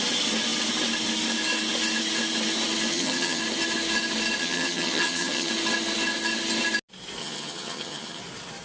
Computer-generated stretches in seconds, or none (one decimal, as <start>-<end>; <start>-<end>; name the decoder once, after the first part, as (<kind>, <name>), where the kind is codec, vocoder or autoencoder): 2.9-3.4 (vocoder, HiFi-GAN); 4.4-5.5; 7.2-8.2